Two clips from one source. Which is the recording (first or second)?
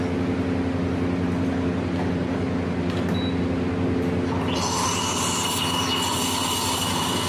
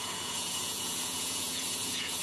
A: first